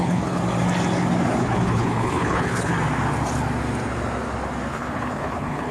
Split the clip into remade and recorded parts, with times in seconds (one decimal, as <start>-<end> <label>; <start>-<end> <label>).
0.0-0.4 remade; 0.4-1.4 recorded; 1.4-2.7 remade; 2.7-4.7 recorded; 4.7-5.7 remade